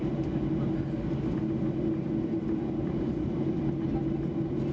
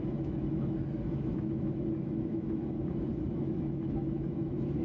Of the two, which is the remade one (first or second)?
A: second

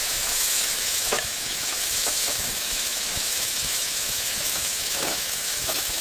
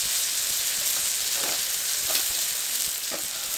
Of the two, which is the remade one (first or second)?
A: first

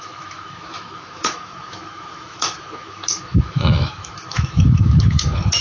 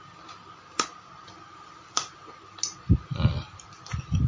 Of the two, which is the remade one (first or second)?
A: first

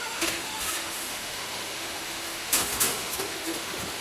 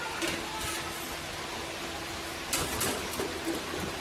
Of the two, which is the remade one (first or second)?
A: first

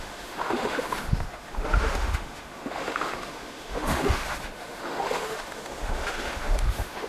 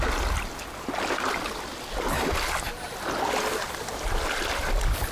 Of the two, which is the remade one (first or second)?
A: first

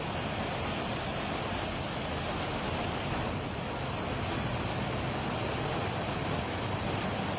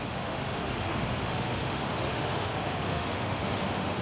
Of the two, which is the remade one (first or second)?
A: second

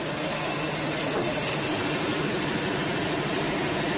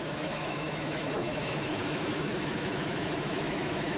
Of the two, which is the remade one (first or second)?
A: second